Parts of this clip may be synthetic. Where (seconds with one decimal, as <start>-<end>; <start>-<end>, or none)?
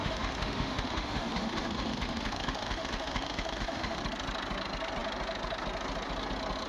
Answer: 0.0-4.0